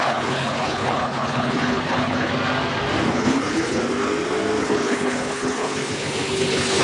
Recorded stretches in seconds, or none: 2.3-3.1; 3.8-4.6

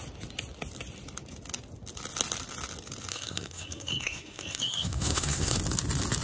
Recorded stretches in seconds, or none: 0.0-3.1; 5.6-6.2

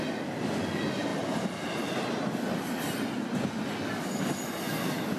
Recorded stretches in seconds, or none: 0.0-5.2

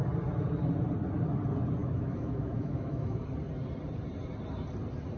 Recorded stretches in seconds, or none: 0.0-1.8; 3.2-5.2

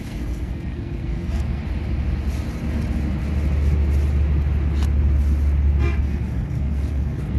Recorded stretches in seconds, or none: 1.6-6.0

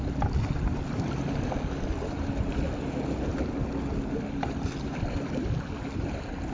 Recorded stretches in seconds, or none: 0.0-6.5

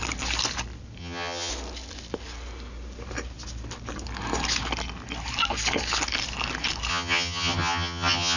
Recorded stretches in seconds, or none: 0.0-1.0; 1.5-6.9